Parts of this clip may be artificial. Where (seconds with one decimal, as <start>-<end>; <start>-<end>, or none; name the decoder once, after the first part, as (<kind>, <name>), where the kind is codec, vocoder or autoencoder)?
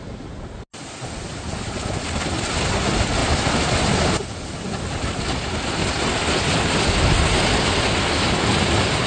none